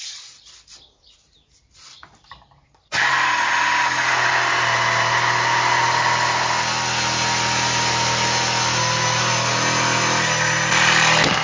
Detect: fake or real real